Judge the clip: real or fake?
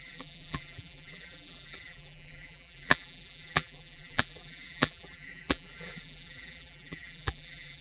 fake